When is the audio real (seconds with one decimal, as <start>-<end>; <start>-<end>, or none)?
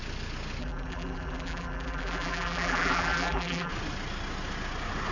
0.0-0.6; 3.7-5.1